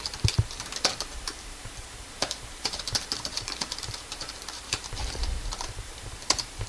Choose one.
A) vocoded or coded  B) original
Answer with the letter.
A